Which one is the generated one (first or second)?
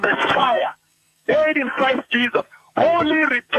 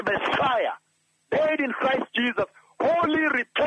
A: first